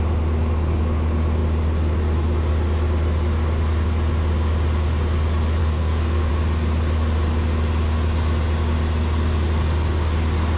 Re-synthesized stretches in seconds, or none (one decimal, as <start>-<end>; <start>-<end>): 5.6-6.3